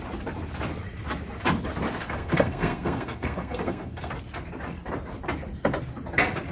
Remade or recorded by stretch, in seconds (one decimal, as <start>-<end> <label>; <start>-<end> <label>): 0.0-1.9 recorded; 1.9-4.1 remade; 4.1-6.5 recorded